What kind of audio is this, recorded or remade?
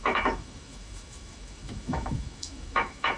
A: remade